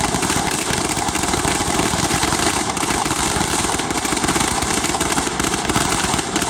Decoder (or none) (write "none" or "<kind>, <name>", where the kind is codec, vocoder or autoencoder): vocoder, BigVGAN v2